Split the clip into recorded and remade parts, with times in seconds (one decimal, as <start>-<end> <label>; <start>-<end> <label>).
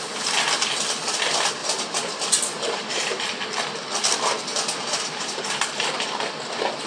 0.0-1.6 recorded; 1.6-3.2 remade; 3.2-4.5 recorded; 4.5-6.0 remade; 6.0-6.9 recorded